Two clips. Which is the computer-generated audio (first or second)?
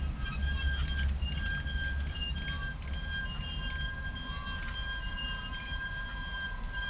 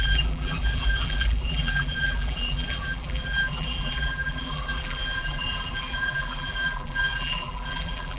second